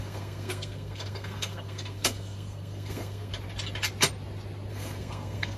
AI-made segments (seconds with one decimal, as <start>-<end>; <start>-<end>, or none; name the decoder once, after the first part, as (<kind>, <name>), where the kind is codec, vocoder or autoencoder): 0.0-3.3 (codec, SNAC); 4.7-5.6